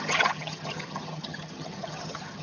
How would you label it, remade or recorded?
remade